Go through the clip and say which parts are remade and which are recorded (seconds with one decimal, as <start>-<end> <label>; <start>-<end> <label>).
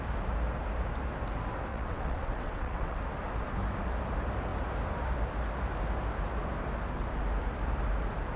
0.0-1.7 recorded; 1.7-3.0 remade; 3.0-8.4 recorded